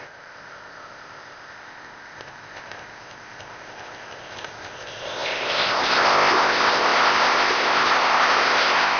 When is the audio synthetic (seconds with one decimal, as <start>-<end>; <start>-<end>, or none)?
0.0-9.0